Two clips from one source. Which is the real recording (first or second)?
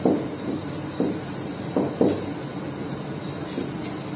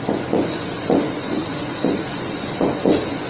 first